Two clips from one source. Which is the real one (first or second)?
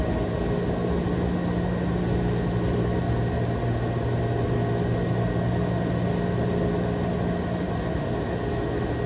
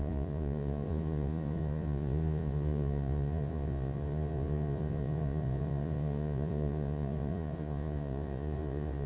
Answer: first